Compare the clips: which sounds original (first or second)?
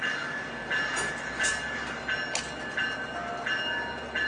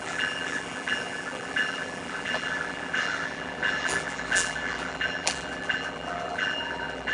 first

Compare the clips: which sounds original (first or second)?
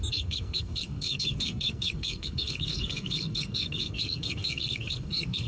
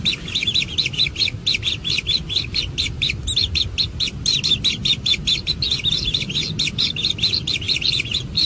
second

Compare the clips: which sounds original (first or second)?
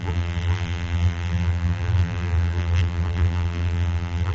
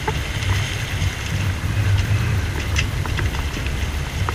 second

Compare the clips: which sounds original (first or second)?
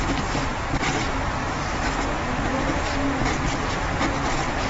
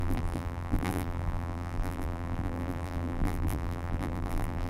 first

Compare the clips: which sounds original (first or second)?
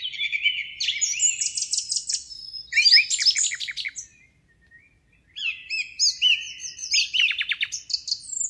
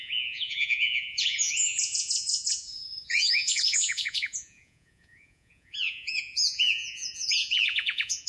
first